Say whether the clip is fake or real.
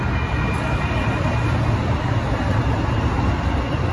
real